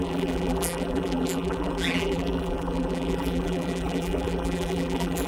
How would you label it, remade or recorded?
remade